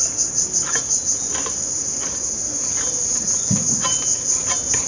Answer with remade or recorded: recorded